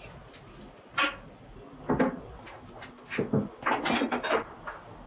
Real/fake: real